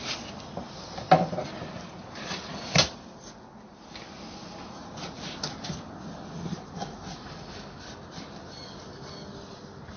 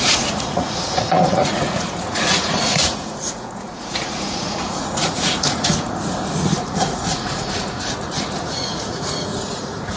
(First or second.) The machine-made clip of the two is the second